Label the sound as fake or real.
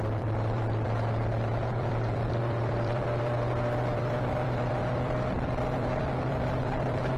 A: fake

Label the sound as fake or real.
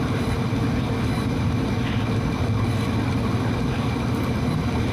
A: fake